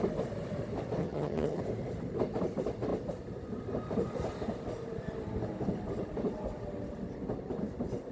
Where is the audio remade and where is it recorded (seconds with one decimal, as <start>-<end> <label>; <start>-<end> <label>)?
0.0-1.0 recorded; 1.0-1.6 remade; 1.6-8.1 recorded